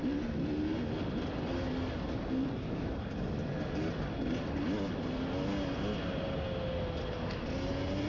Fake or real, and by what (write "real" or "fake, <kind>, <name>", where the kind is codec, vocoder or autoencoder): real